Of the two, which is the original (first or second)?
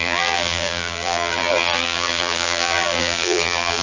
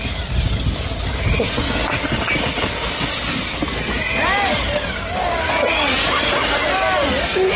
second